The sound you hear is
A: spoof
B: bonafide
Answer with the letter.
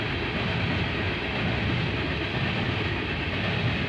B